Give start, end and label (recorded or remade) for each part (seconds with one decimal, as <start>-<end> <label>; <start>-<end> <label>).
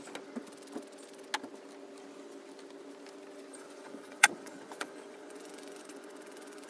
0.0-3.5 recorded; 3.5-6.7 remade